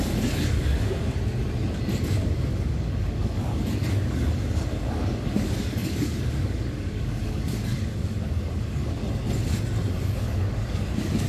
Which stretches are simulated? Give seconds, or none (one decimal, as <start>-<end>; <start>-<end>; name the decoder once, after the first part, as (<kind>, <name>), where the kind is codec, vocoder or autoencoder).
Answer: 0.0-1.1 (codec, DAC); 1.9-9.0; 10.0-11.3